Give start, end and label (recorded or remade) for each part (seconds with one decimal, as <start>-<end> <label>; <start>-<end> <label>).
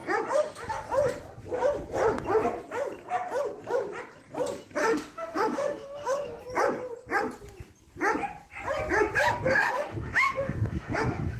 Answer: 0.0-4.8 recorded; 4.8-6.4 remade; 6.4-9.5 recorded; 9.5-11.4 remade